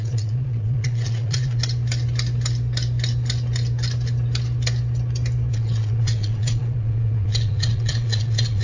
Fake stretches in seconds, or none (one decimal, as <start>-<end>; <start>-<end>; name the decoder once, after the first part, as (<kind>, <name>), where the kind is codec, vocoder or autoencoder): 0.0-1.6 (vocoder, Vocos); 5.5-8.6